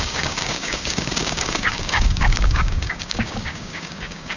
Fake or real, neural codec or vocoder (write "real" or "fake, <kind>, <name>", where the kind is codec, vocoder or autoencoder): fake, codec, DAC